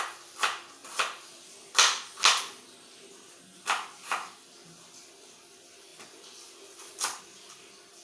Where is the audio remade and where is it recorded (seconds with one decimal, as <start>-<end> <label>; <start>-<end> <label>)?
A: 0.0-8.0 recorded

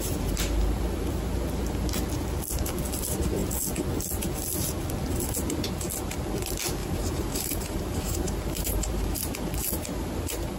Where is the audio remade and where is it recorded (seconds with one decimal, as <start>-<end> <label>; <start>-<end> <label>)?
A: 0.0-6.8 recorded; 6.8-9.3 remade; 9.3-10.6 recorded

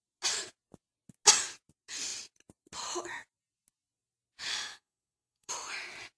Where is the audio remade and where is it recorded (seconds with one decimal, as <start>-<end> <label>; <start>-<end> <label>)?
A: 0.0-4.5 recorded; 4.5-5.5 remade; 5.5-6.2 recorded